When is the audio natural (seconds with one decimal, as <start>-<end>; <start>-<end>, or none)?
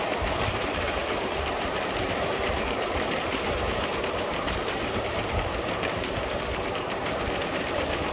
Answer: 7.0-7.5